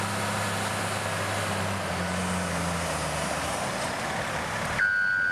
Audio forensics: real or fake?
real